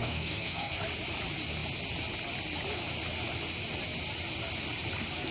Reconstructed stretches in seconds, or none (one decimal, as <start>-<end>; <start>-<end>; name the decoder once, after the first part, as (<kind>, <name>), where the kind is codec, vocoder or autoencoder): 0.0-0.8 (codec, SNAC)